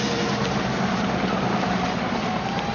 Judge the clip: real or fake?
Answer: real